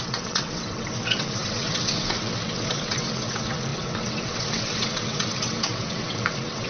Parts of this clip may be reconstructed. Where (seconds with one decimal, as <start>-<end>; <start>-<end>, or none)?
0.0-6.7